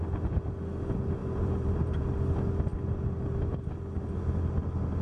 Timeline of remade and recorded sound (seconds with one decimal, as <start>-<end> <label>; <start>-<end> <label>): 0.0-1.2 recorded; 1.2-2.0 remade; 2.0-5.0 recorded